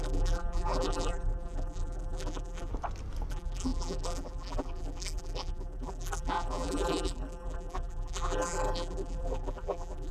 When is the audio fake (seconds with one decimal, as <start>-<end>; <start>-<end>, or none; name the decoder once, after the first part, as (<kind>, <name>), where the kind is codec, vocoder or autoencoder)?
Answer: 0.0-2.7 (vocoder, BigVGAN v2); 3.3-10.1